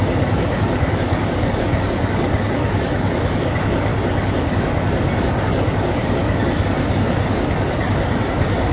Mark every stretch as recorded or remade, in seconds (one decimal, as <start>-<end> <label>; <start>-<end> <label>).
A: 0.0-3.9 remade; 3.9-4.4 recorded; 4.4-8.7 remade